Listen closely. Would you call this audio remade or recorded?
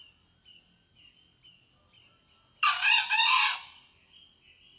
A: recorded